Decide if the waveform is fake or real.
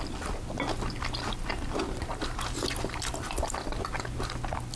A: real